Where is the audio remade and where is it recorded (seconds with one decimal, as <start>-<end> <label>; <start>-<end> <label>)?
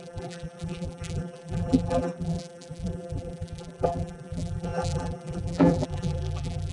0.0-6.7 remade